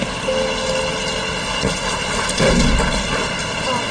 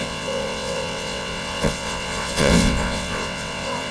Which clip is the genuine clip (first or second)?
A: first